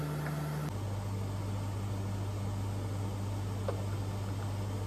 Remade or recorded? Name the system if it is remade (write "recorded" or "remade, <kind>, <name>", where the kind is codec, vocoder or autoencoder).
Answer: recorded